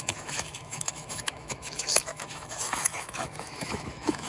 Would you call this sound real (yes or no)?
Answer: no